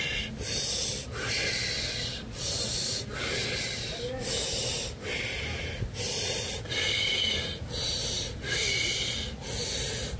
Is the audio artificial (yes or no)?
no